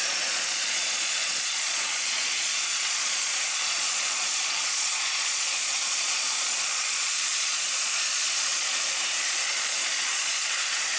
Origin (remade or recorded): remade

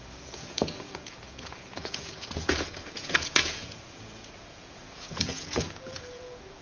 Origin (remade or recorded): remade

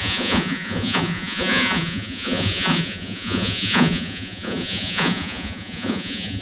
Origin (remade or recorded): remade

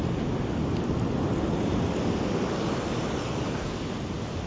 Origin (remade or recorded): recorded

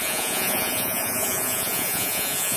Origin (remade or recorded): remade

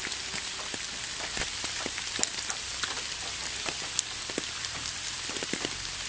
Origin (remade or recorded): recorded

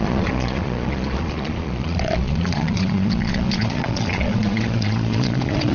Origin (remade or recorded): remade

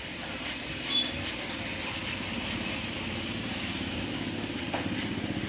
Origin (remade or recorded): recorded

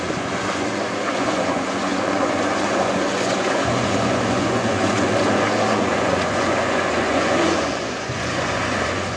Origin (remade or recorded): remade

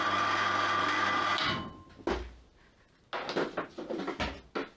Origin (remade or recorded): recorded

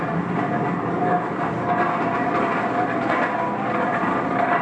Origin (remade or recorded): recorded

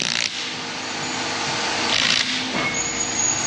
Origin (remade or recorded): recorded